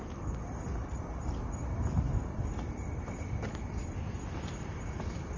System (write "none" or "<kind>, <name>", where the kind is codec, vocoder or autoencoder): vocoder, BigVGAN v2